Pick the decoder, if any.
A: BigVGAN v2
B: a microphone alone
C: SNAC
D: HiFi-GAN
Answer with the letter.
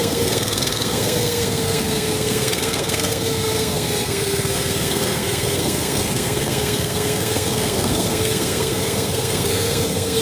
C